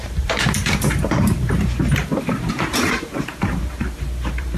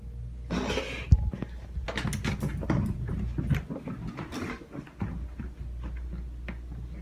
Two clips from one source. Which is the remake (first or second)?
first